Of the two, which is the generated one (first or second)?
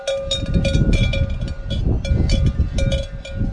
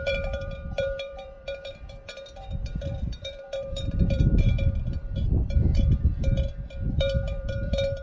second